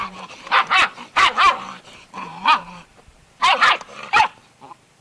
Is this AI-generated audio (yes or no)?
yes